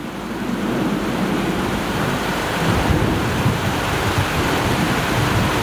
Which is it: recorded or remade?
remade